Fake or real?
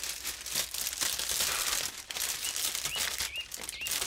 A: real